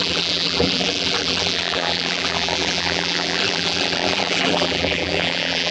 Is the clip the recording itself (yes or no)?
no